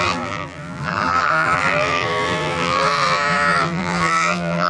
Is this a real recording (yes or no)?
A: no